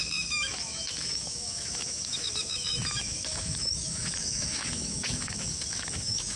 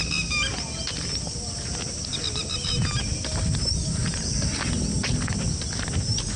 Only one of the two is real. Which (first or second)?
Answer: second